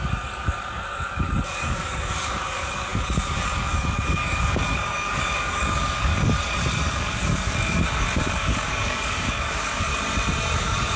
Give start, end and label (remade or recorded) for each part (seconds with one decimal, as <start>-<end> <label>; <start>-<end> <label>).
0.0-6.1 remade; 6.1-6.9 recorded; 6.9-9.9 remade; 9.9-10.6 recorded; 10.6-11.0 remade